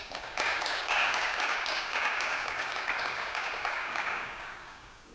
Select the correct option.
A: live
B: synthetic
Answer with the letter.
B